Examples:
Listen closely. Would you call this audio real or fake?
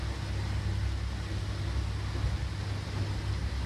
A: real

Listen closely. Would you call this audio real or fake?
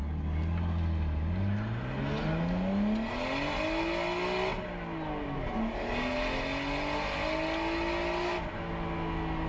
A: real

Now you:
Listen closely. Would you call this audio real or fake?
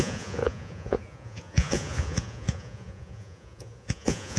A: fake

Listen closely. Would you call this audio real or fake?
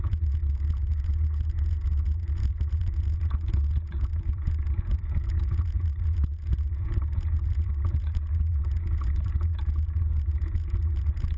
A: fake